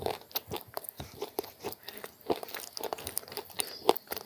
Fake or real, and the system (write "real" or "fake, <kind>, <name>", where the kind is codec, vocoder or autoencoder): real